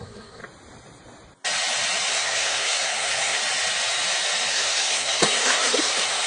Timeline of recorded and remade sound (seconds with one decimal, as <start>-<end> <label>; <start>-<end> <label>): 0.0-0.4 remade; 0.4-2.1 recorded; 2.1-3.4 remade; 3.4-4.5 recorded; 4.5-6.3 remade